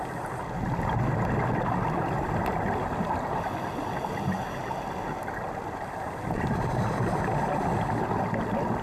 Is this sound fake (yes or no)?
no